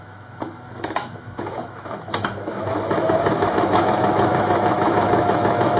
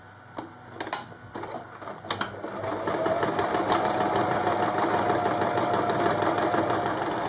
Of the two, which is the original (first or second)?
second